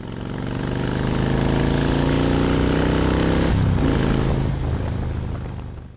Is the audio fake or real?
real